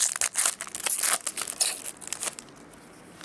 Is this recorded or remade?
recorded